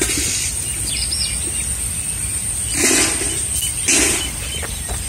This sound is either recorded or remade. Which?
recorded